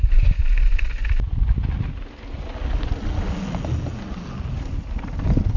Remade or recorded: recorded